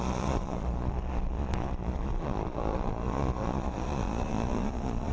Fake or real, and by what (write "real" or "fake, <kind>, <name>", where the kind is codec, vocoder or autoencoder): fake, vocoder, Vocos